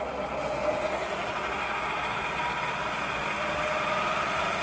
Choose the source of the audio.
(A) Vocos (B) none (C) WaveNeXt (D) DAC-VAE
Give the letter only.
B